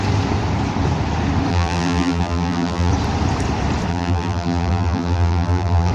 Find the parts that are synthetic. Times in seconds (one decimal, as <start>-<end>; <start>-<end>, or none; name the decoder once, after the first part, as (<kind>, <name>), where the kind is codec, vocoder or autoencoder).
1.5-2.9 (vocoder, BigVGAN v2); 3.9-5.9